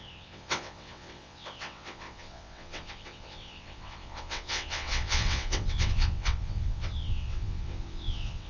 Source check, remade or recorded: remade